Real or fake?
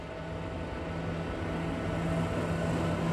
real